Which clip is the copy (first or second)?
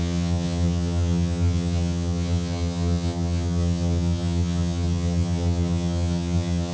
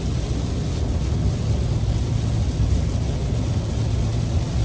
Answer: first